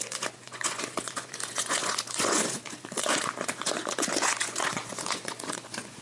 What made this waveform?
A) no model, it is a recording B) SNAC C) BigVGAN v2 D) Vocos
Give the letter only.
D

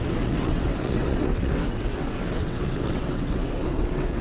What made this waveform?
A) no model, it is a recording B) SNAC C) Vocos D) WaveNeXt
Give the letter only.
D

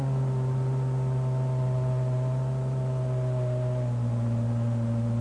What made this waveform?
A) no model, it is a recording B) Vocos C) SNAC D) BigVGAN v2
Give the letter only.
A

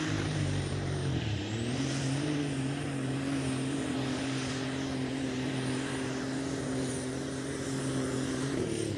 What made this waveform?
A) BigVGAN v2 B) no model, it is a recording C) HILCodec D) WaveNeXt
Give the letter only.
A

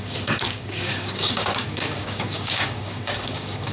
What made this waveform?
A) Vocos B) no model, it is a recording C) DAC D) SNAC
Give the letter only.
C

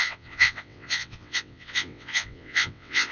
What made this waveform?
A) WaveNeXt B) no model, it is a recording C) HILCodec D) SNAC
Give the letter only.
A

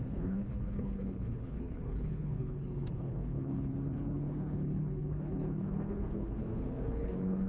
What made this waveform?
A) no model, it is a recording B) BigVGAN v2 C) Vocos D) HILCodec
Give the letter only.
D